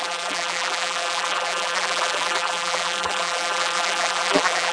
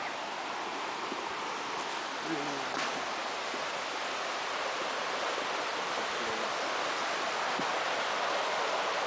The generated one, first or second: first